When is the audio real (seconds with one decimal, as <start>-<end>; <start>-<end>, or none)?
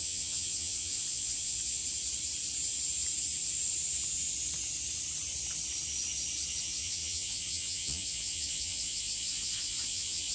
1.8-6.6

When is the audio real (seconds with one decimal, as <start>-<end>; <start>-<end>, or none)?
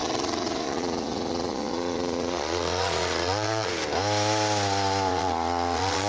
3.7-5.1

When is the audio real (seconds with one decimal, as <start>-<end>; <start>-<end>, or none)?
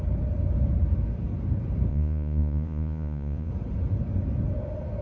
0.0-1.9; 3.5-5.0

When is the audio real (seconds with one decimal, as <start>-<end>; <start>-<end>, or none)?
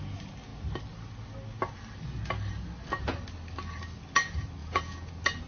0.0-4.6; 5.1-5.5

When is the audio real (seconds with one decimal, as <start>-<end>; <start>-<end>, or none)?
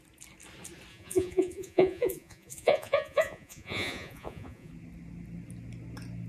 0.0-0.9; 4.7-6.3